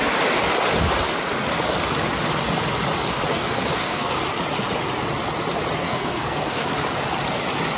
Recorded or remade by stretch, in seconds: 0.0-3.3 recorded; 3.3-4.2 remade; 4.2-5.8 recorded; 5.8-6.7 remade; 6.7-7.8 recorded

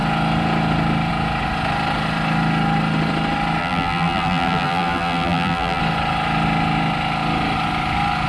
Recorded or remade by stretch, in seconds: 0.0-3.6 recorded; 3.6-5.8 remade; 5.8-8.3 recorded

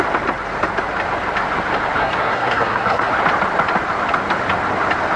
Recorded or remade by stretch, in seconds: 0.0-2.0 recorded; 2.0-3.1 remade; 3.1-5.2 recorded

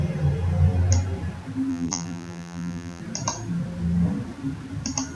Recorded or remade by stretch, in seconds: 0.0-1.7 recorded; 1.7-3.0 remade; 3.0-5.1 recorded

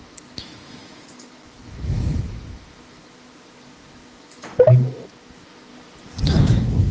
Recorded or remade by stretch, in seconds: 0.0-4.5 remade; 4.5-5.2 recorded; 5.2-5.7 remade; 5.7-6.4 recorded; 6.4-6.9 remade

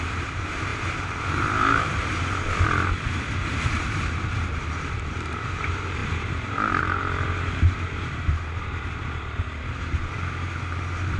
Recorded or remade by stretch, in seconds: 0.0-11.2 remade